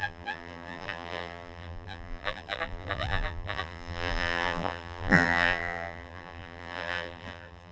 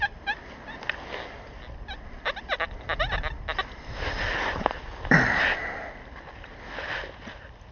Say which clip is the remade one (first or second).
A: first